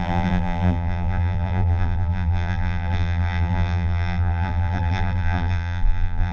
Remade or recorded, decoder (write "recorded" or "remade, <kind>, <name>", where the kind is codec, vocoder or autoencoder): remade, vocoder, BigVGAN v2